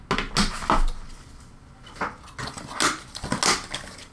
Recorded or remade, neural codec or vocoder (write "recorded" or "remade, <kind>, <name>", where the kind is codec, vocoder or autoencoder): recorded